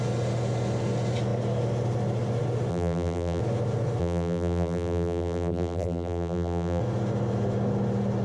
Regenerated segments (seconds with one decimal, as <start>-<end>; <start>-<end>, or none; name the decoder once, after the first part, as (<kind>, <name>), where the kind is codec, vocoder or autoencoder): 2.7-3.4 (vocoder, BigVGAN v2); 4.0-6.8